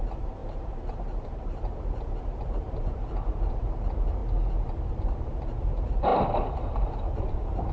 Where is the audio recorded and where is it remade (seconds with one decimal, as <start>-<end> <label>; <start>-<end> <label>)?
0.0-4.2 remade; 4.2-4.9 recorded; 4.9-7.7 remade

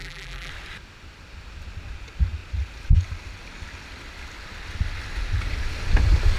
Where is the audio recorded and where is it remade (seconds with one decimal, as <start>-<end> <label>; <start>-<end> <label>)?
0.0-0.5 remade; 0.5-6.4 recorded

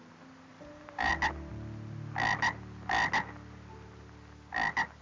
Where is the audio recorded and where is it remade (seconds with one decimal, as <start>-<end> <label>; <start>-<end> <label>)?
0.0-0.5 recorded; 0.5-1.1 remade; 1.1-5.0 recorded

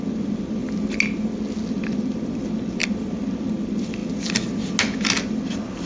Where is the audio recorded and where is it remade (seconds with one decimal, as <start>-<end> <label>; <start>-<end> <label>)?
0.0-0.6 remade; 0.6-1.7 recorded; 1.7-4.0 remade; 4.0-5.3 recorded; 5.3-5.9 remade

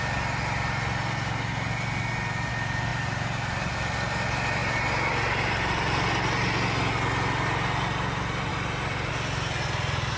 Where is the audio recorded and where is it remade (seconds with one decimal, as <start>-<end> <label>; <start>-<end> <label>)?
0.0-2.9 recorded; 2.9-3.7 remade; 3.7-4.6 recorded; 4.6-6.1 remade; 6.1-8.5 recorded; 8.5-9.1 remade; 9.1-10.2 recorded

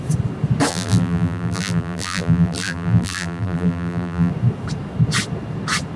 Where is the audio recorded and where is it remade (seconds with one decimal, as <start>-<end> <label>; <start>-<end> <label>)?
0.0-0.7 recorded; 0.7-4.3 remade; 4.3-6.0 recorded

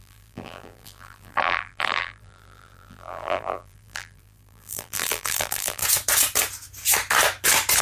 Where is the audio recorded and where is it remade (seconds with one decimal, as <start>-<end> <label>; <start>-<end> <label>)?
0.0-5.8 remade; 5.8-7.8 recorded

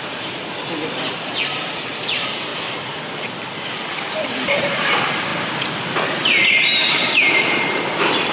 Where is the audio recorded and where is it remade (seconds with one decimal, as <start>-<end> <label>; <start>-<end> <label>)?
0.0-0.4 remade; 0.4-0.9 recorded; 0.9-2.5 remade; 2.5-3.9 recorded; 3.9-5.3 remade; 5.3-6.5 recorded; 6.5-8.3 remade